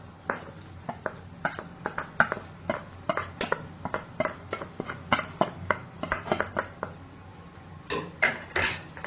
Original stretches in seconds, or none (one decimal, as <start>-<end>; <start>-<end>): 0.0-9.1

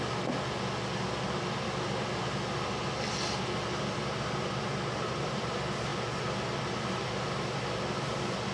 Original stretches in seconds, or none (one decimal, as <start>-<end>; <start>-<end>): 0.0-8.5